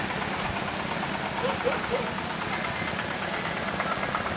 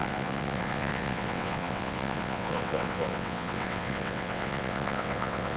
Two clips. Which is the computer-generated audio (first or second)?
second